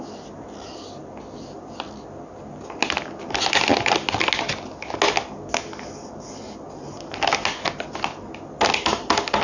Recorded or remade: recorded